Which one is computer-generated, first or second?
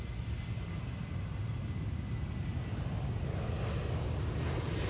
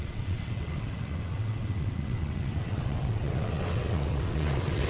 second